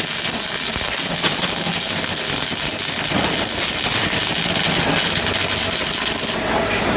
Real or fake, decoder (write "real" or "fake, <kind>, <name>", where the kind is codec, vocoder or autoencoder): real